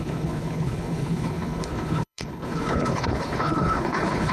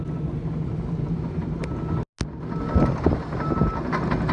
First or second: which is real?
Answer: second